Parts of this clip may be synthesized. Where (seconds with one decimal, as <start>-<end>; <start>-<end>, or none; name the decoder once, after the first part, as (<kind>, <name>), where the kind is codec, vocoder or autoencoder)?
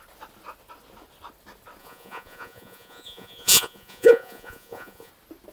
1.8-5.1 (vocoder, Vocos)